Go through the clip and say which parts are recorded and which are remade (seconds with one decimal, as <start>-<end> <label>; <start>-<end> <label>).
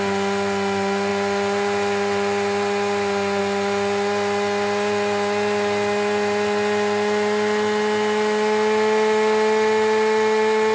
0.0-10.7 recorded